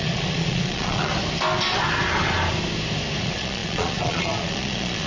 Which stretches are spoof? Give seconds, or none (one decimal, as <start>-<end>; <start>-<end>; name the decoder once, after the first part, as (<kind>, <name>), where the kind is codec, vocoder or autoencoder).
0.0-1.1 (vocoder, Vocos); 3.2-5.1